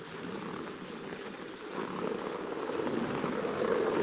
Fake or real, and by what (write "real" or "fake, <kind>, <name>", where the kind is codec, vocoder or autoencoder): real